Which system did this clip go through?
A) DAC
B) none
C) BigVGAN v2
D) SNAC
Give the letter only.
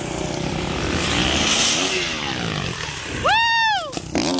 B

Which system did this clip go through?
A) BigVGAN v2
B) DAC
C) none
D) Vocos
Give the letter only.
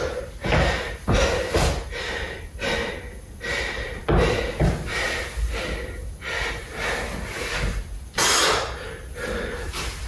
C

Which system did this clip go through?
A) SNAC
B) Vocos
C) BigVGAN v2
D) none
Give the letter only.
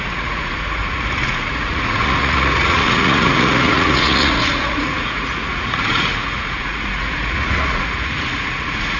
B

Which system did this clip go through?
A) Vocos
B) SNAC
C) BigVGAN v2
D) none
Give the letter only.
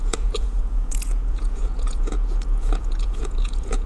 A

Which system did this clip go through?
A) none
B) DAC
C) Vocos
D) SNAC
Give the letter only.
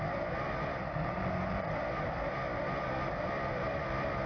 A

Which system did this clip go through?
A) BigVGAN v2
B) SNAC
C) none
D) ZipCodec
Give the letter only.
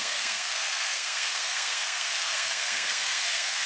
B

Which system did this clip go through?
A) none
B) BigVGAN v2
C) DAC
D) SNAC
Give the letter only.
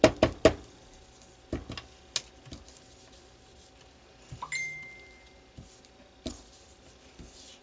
A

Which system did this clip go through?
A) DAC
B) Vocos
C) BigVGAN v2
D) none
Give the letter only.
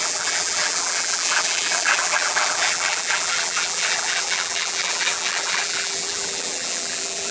C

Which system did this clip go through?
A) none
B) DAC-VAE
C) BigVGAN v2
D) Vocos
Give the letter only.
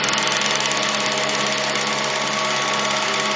A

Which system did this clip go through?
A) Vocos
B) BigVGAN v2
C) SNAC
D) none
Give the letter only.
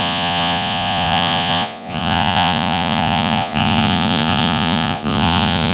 A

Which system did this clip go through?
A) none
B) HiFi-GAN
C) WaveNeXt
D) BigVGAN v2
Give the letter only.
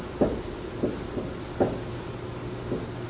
A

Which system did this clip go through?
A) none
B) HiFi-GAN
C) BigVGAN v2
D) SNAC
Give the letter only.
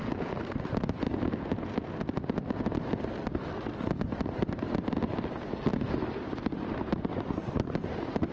A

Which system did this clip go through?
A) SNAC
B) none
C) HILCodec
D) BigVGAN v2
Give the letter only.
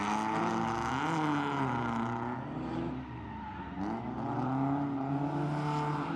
B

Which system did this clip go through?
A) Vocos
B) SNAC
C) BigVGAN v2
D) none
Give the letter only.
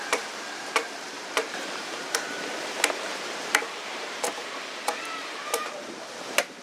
C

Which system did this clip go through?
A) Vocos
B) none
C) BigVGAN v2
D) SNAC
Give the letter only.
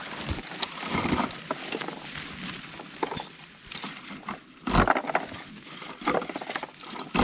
B